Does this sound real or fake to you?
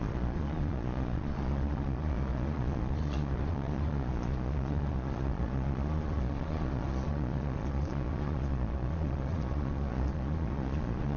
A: fake